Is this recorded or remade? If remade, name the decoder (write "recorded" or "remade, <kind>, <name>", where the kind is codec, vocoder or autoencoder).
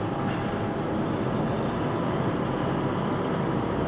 recorded